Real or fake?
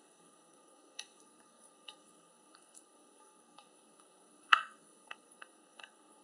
fake